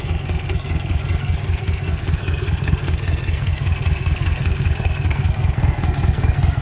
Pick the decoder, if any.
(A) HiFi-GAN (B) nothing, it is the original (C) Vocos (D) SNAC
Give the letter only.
D